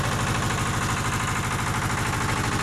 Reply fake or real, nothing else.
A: real